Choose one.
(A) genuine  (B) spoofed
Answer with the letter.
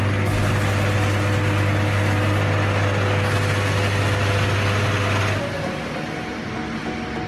A